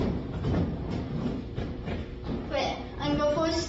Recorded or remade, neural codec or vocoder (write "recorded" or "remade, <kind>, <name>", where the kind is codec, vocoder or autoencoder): remade, vocoder, BigVGAN v2